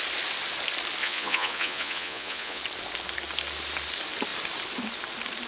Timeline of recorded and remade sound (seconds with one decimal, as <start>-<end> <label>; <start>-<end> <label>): 0.0-1.0 recorded; 1.0-2.6 remade; 2.6-5.5 recorded